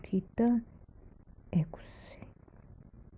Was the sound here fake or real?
real